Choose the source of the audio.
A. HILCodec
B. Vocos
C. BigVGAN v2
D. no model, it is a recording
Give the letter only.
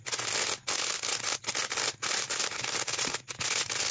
D